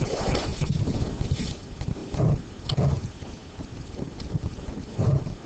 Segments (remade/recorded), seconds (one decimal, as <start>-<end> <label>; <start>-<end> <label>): 0.0-5.5 recorded

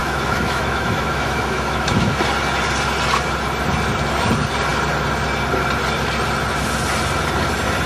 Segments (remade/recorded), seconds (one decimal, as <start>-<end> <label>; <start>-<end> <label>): 0.0-2.2 remade; 2.2-7.9 recorded

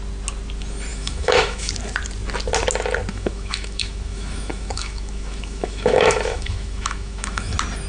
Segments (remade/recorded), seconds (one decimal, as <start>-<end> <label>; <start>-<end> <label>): 0.0-0.9 recorded; 0.9-1.7 remade; 1.7-3.1 recorded; 3.1-7.5 remade; 7.5-7.9 recorded

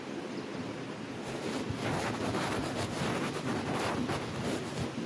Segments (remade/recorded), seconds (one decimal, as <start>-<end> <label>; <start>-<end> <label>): 0.0-5.1 recorded